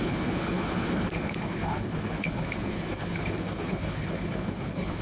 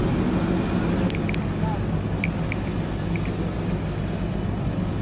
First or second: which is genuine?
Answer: second